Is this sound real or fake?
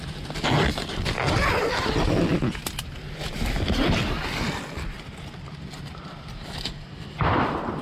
real